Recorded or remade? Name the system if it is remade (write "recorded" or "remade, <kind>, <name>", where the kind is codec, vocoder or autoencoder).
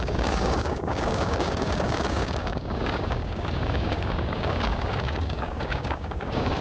remade, codec, DAC